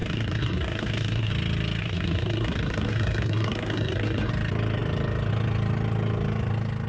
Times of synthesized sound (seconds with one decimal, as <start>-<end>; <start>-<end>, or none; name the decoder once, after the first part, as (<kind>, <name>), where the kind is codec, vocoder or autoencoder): 0.0-1.3 (codec, SNAC); 1.8-4.3